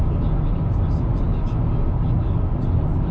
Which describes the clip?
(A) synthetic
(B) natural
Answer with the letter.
B